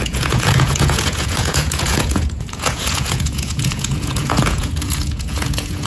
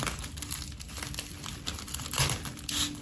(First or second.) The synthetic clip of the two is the first